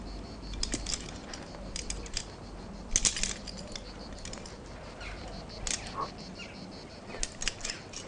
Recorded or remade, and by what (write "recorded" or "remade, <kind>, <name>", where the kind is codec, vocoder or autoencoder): recorded